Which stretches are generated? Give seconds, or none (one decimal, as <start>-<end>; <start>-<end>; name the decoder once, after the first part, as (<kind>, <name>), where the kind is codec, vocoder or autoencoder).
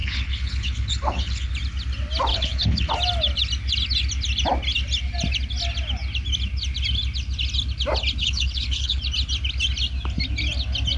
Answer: 0.0-1.5 (codec, HILCodec); 2.3-2.9; 8.2-9.0